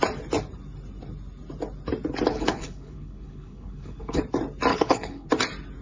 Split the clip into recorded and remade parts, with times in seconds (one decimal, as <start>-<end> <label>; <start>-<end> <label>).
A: 0.0-2.3 recorded; 2.3-4.2 remade; 4.2-4.7 recorded; 4.7-5.3 remade; 5.3-5.8 recorded

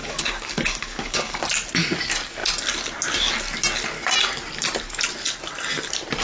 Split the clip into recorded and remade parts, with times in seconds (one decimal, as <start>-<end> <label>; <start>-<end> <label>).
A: 0.0-1.4 remade; 1.4-6.2 recorded

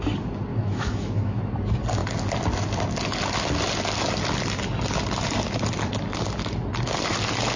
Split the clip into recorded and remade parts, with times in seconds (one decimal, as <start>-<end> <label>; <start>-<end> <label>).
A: 0.0-0.5 recorded; 0.5-1.4 remade; 1.4-7.6 recorded

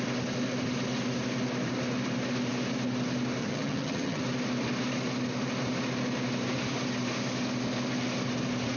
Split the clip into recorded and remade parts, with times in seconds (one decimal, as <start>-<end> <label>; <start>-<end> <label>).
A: 0.0-3.4 recorded; 3.4-4.2 remade; 4.2-8.8 recorded

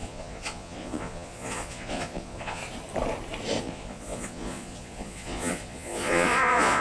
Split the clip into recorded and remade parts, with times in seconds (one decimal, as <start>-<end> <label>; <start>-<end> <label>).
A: 0.0-2.6 remade; 2.6-3.6 recorded; 3.6-6.8 remade

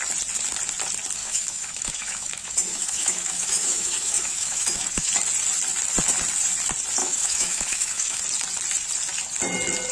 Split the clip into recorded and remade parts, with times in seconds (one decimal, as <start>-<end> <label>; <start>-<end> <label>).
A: 0.0-1.2 recorded; 1.2-5.1 remade; 5.1-7.0 recorded; 7.0-8.2 remade; 8.2-9.9 recorded